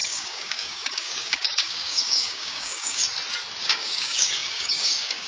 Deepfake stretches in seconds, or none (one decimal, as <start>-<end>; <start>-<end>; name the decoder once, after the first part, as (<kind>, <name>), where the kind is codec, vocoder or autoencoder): 0.0-3.0 (codec, DAC); 3.6-5.3